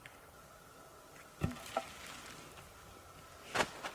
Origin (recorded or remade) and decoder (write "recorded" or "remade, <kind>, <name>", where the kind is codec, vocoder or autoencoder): recorded